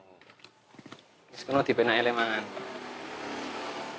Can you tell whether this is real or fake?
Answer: real